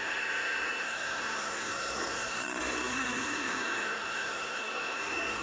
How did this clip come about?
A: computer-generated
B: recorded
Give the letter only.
A